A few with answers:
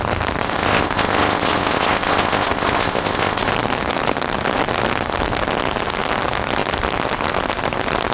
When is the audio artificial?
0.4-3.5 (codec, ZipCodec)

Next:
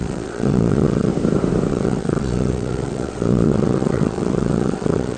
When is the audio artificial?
0.0-1.1 (vocoder, WaveNeXt); 1.7-5.2

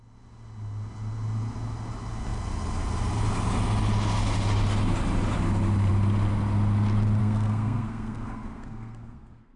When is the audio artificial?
7.2-9.6 (codec, SNAC)

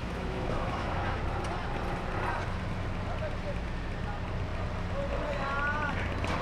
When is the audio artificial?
0.0-1.2 (autoencoder, DAC-VAE)

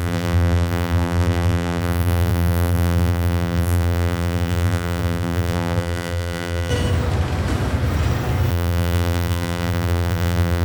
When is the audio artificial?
0.0-6.7 (vocoder, BigVGAN v2); 8.5-10.6

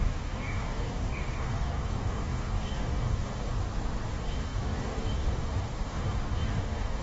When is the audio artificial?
0.0-3.5 (codec, DAC); 4.1-7.0